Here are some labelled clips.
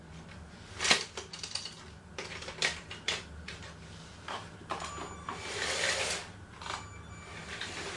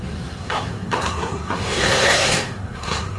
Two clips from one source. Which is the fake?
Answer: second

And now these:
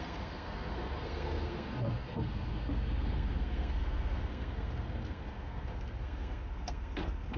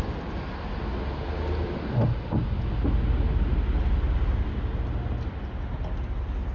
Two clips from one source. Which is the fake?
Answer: first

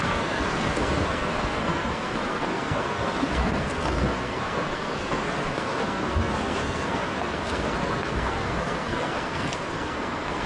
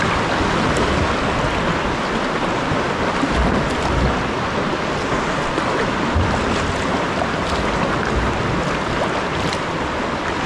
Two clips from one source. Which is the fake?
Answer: first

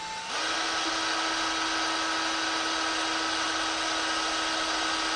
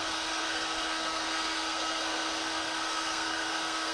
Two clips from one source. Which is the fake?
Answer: second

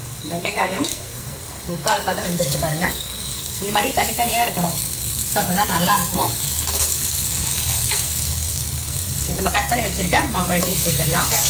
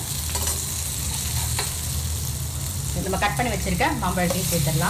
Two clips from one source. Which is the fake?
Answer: first